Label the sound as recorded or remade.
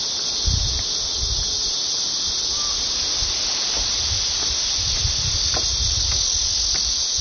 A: recorded